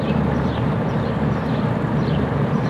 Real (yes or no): no